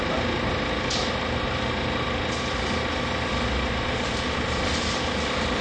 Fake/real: real